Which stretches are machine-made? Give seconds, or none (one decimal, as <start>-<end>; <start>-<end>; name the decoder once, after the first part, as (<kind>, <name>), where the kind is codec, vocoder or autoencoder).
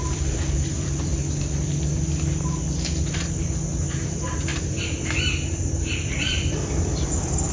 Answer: 0.0-1.1 (vocoder, BigVGAN v2); 3.4-7.5